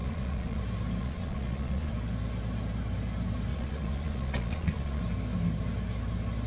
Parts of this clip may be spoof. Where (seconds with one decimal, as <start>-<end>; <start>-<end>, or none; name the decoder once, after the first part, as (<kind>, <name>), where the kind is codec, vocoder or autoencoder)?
0.0-0.6 (vocoder, Vocos); 1.0-1.9; 3.5-5.0